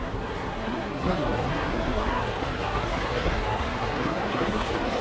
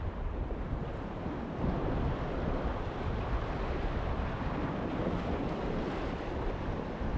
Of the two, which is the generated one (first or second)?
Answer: first